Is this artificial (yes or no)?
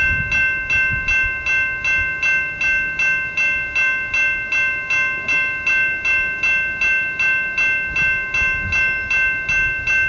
no